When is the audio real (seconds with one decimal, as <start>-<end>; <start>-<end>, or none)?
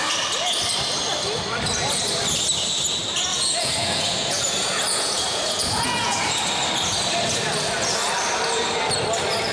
0.0-3.3; 6.3-9.5